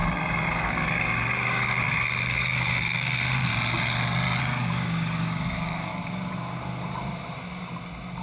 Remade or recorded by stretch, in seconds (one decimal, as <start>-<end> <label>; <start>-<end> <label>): 0.0-3.5 remade; 3.5-4.4 recorded; 4.4-5.9 remade; 5.9-8.2 recorded